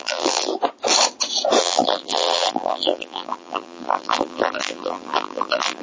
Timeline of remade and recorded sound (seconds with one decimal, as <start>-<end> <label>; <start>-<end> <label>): 0.0-0.5 remade; 0.5-1.6 recorded; 1.6-5.8 remade